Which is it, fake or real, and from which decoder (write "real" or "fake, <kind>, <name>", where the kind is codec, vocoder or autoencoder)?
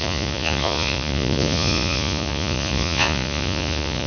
fake, vocoder, Vocos